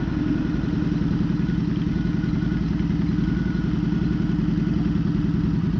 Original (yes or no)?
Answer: yes